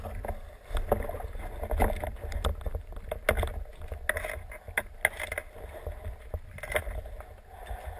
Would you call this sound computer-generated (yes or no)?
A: no